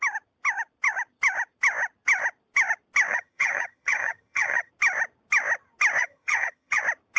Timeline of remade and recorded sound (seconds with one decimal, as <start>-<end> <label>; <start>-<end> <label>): 0.0-3.1 recorded; 3.1-4.7 remade; 4.7-6.0 recorded; 6.0-6.8 remade; 6.8-7.2 recorded